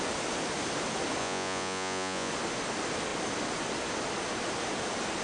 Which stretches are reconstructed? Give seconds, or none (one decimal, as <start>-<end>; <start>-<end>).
1.2-2.3

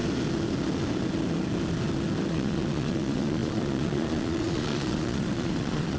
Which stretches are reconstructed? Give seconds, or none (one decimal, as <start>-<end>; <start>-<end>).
2.3-6.0

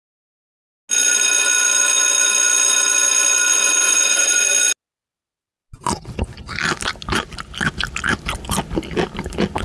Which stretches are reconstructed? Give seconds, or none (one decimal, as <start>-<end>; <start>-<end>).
3.5-4.5